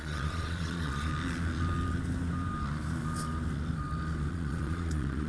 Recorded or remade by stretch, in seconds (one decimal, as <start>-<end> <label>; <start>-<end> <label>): 0.0-1.1 remade; 1.1-4.3 recorded; 4.3-5.3 remade